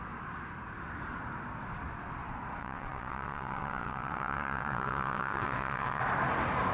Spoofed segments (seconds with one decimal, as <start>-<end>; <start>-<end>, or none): 2.6-6.0